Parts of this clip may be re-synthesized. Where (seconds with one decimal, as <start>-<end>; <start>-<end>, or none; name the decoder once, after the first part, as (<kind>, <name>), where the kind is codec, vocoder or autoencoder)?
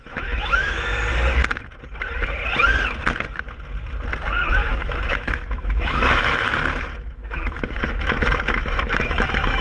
0.0-0.9 (autoencoder, DAC-VAE); 4.5-9.6